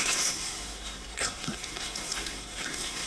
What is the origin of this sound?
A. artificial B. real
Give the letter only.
A